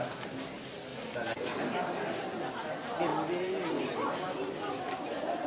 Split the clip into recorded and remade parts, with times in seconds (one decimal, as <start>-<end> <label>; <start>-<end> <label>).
0.0-5.5 recorded